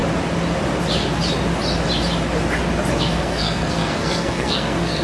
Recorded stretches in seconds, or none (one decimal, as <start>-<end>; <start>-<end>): 0.0-3.0